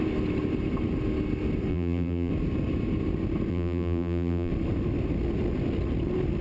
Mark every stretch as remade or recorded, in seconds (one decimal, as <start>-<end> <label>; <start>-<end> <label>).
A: 0.0-1.7 recorded; 1.7-2.3 remade; 2.3-3.5 recorded; 3.5-4.5 remade; 4.5-6.4 recorded